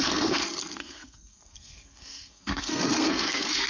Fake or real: fake